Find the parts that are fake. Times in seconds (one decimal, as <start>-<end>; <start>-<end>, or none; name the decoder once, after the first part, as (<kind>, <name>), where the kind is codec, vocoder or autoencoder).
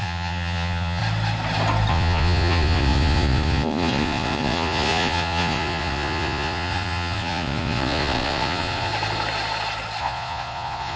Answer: 0.0-1.0 (vocoder, Vocos); 1.9-8.9; 10.0-11.0